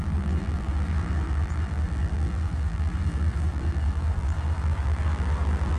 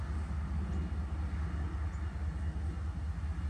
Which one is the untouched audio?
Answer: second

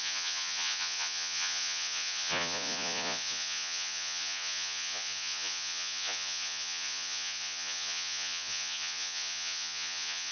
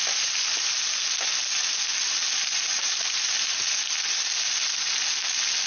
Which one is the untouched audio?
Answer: second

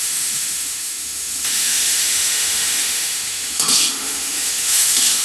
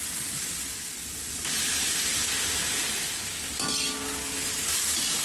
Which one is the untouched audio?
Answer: second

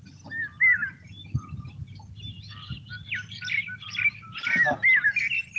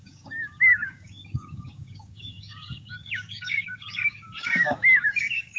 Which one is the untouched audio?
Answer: first